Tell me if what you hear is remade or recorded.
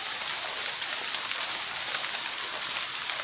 recorded